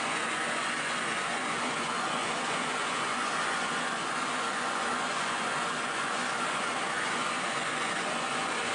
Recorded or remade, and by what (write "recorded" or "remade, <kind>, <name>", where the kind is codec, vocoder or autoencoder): remade, vocoder, Vocos